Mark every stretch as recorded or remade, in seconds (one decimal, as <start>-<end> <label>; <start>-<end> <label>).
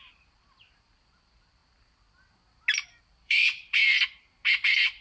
0.0-1.6 remade; 1.6-3.0 recorded; 3.0-3.8 remade; 3.8-4.5 recorded; 4.5-5.0 remade